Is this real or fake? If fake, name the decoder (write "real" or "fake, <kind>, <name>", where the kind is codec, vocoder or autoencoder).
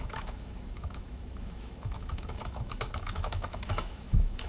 fake, autoencoder, DAC-VAE